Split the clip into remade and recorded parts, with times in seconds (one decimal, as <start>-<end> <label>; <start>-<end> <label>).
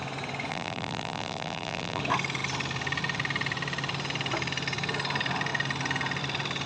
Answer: 0.0-0.5 recorded; 0.5-2.0 remade; 2.0-6.7 recorded